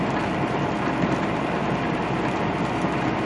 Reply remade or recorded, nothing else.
recorded